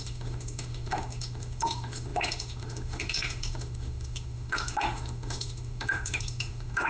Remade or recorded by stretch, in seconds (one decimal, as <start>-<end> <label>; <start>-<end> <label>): 0.0-6.9 remade